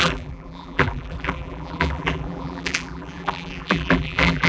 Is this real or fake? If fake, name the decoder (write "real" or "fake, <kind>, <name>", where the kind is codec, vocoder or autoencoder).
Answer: fake, vocoder, BigVGAN v2